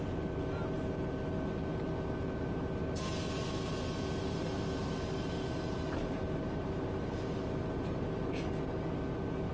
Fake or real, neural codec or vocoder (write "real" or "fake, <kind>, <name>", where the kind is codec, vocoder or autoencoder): real